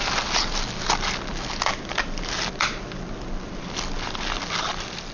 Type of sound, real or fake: real